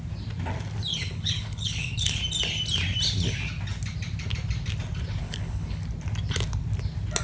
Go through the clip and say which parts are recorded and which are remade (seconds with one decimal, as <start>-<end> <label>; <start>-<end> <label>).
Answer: 0.0-0.9 recorded; 0.9-2.2 remade; 2.2-5.2 recorded; 5.2-5.8 remade; 5.8-7.2 recorded